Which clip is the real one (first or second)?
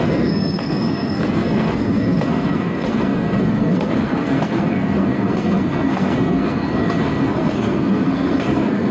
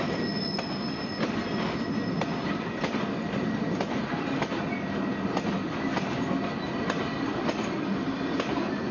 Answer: second